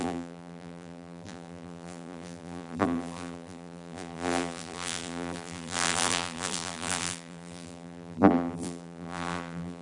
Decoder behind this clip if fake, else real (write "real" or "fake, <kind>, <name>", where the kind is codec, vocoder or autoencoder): fake, vocoder, BigVGAN v2